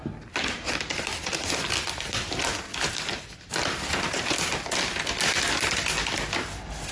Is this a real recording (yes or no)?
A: yes